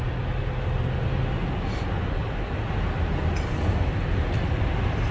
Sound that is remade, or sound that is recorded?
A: recorded